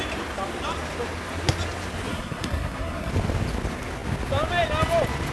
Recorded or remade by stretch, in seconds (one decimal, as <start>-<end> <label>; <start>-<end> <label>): 0.0-2.1 recorded; 2.1-3.1 remade; 3.1-5.3 recorded